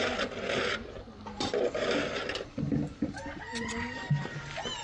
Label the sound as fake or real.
real